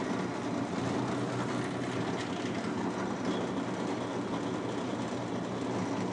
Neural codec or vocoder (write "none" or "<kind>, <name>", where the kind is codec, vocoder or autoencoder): none